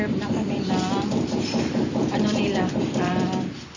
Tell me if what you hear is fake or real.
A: fake